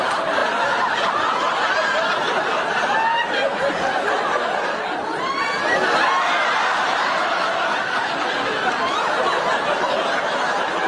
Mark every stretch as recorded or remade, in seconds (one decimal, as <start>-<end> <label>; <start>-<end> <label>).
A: 0.0-10.9 recorded